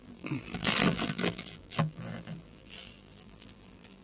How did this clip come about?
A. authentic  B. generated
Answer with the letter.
B